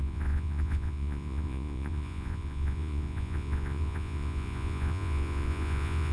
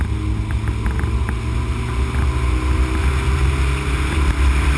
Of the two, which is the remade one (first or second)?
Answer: first